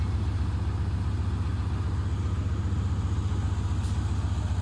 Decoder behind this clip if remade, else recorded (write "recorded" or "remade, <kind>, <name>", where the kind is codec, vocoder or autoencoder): recorded